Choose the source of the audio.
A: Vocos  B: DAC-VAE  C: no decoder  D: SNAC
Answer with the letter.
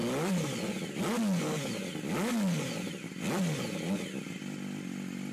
C